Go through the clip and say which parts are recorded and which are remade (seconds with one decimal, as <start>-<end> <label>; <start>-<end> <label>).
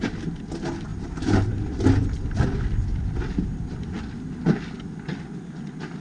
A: 0.0-6.0 recorded